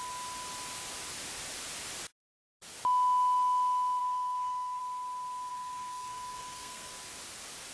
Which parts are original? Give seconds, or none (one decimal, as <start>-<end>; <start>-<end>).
0.0-4.0; 4.8-5.5; 6.9-7.7